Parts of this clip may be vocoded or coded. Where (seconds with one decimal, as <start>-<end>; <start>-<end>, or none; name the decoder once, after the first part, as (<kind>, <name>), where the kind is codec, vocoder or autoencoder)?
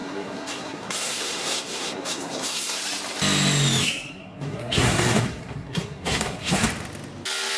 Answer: 0.0-2.8 (codec, SNAC); 3.8-6.7